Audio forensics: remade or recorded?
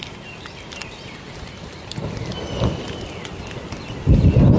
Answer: recorded